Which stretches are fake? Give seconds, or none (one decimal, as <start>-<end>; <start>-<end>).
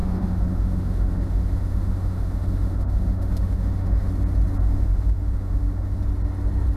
0.0-4.1; 4.6-6.0